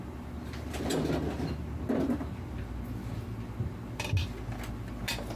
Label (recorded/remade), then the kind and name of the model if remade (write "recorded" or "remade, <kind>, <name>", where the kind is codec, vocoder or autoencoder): recorded